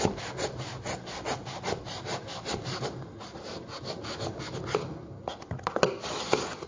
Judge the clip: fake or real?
real